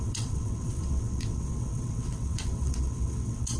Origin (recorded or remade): remade